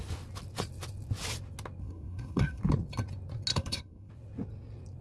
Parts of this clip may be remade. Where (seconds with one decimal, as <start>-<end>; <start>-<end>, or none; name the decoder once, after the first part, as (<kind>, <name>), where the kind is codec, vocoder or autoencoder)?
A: 1.8-2.6 (codec, SNAC); 3.5-4.1